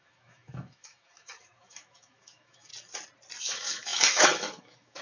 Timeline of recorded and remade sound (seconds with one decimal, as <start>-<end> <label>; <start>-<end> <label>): 0.0-2.7 remade; 2.7-3.4 recorded; 3.4-5.0 remade